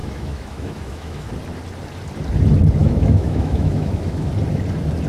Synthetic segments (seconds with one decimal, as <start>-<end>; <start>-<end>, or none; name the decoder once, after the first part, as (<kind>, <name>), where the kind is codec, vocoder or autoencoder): 0.0-1.3 (autoencoder, DAC-VAE); 2.8-4.3